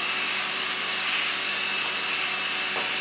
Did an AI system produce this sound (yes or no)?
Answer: no